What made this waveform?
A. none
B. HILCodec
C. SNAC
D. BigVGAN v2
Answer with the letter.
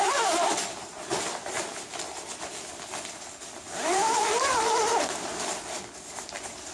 A